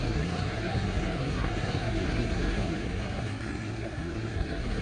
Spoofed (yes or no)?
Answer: yes